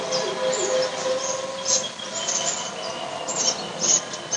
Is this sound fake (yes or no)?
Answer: no